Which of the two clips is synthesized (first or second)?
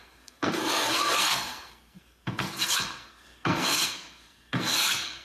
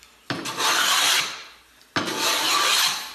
first